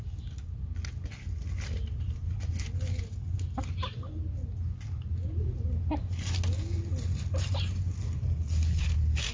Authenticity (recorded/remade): recorded